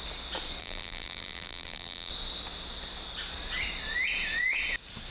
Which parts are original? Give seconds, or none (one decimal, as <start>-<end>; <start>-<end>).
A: 0.0-0.6; 2.1-5.1